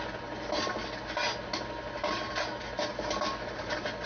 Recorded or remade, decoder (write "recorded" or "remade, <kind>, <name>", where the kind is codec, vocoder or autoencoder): recorded